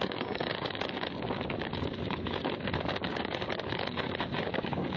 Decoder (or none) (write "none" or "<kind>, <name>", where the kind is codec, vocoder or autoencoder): codec, DAC